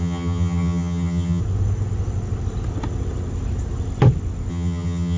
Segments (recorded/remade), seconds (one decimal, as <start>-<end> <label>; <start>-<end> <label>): 0.0-1.4 remade; 1.4-4.5 recorded; 4.5-5.2 remade